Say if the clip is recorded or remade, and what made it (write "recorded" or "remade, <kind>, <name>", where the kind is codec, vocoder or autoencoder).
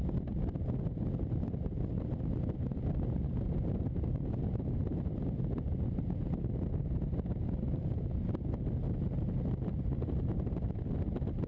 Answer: recorded